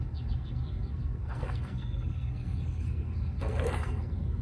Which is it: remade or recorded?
remade